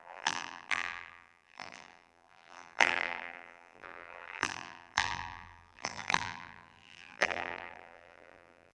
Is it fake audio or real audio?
fake